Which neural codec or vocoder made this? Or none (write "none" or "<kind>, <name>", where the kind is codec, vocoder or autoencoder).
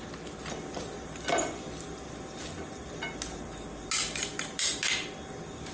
none